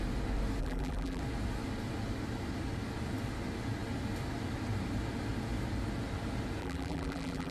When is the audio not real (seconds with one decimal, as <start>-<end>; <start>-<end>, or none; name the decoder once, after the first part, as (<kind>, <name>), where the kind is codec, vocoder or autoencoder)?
0.6-1.2 (vocoder, BigVGAN v2); 6.6-7.5